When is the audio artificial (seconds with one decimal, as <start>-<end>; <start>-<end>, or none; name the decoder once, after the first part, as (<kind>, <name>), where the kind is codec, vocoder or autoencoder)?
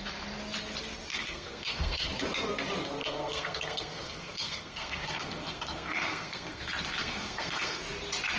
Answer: 1.1-2.1 (codec, SNAC); 3.0-6.6; 7.0-7.8